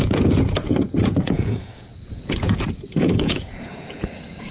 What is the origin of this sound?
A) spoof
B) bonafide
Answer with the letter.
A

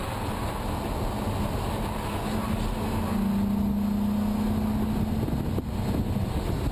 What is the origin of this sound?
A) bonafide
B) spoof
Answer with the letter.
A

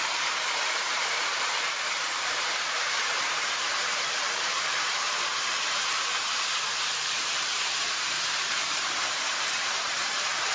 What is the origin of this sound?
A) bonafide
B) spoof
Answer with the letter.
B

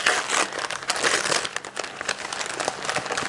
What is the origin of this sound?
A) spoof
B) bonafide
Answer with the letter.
B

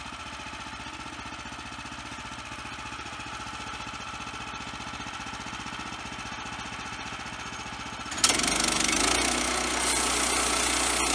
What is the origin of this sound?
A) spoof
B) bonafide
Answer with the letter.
B